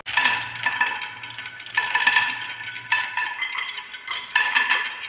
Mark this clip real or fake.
real